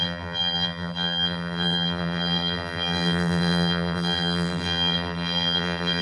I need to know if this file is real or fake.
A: fake